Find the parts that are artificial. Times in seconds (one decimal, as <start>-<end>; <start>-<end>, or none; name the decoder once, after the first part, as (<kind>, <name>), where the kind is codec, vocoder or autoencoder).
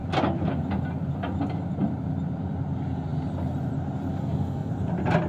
4.2-4.7 (codec, SNAC)